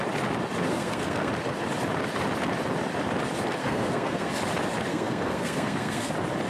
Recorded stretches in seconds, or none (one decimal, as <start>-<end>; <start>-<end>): 0.0-0.7; 1.3-3.6; 4.3-4.9; 6.1-6.5